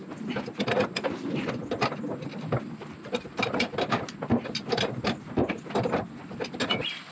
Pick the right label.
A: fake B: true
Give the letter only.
B